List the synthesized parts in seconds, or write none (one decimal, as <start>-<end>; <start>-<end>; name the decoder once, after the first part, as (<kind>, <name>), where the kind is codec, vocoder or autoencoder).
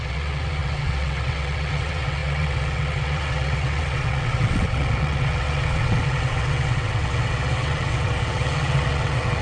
0.0-9.4 (vocoder, WaveNeXt)